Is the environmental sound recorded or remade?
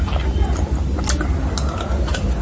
recorded